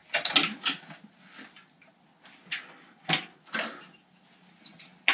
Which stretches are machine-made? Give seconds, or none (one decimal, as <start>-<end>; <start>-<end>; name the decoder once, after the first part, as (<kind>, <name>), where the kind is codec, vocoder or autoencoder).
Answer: none

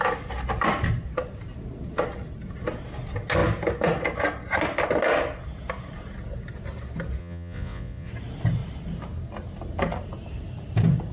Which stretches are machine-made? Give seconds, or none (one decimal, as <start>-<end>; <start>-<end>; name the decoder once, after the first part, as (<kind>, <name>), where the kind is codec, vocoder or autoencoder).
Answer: 7.2-8.1 (vocoder, Vocos)

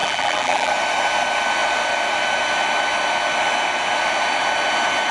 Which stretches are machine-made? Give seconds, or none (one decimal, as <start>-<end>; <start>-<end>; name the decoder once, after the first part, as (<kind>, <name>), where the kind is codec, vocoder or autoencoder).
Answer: 0.0-0.7 (vocoder, BigVGAN v2)

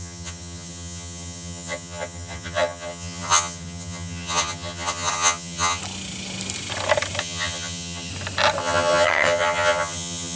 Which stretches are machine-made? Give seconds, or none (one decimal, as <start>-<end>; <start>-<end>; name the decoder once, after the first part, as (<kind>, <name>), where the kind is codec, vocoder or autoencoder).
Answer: 0.0-5.8 (vocoder, HiFi-GAN); 7.2-8.1; 8.6-10.4

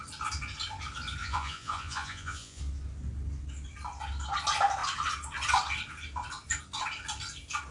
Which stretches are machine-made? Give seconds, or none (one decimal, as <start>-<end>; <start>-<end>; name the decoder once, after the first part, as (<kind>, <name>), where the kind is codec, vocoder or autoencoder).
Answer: 1.2-2.6 (vocoder, Vocos)

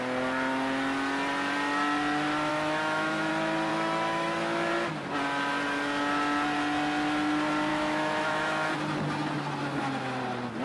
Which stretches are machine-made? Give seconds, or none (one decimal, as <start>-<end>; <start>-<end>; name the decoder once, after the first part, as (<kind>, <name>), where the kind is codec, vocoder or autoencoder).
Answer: 2.5-3.3 (autoencoder, DAC-VAE); 3.7-4.7; 7.7-8.7

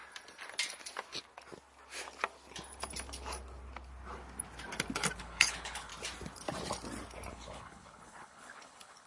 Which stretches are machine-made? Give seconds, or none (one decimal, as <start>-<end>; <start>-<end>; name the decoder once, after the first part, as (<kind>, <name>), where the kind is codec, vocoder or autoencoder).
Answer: 5.2-5.9 (codec, HILCodec); 7.3-9.1